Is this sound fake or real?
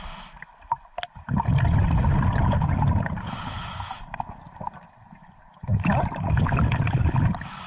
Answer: real